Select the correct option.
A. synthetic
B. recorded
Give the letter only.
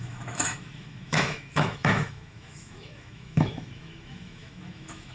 A